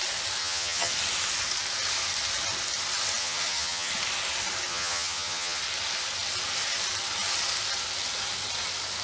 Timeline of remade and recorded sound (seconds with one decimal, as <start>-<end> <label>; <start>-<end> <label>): 0.0-0.4 recorded; 0.4-0.9 remade; 0.9-3.2 recorded; 3.2-3.9 remade; 3.9-4.7 recorded; 4.7-5.6 remade; 5.6-9.0 recorded